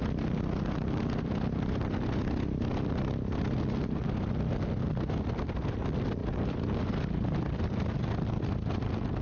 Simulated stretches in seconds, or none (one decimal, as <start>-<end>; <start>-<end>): 6.2-8.0